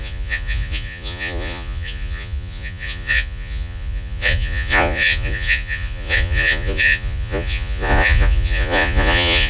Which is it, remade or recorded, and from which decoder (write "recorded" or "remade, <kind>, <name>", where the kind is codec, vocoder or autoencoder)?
remade, vocoder, Vocos